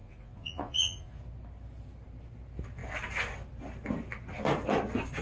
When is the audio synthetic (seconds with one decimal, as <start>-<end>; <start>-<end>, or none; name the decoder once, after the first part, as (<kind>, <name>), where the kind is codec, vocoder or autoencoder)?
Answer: 0.0-1.2 (vocoder, Vocos)